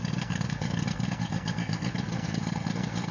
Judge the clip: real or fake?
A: fake